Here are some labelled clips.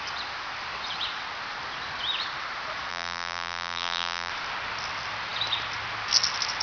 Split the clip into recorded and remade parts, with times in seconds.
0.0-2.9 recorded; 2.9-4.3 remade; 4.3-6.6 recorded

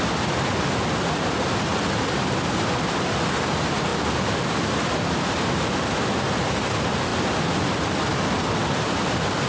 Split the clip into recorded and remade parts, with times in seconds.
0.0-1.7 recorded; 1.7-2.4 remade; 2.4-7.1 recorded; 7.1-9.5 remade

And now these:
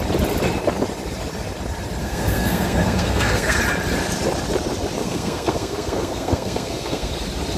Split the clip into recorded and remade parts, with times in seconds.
0.0-2.0 recorded; 2.0-3.6 remade; 3.6-5.0 recorded; 5.0-7.1 remade; 7.1-7.6 recorded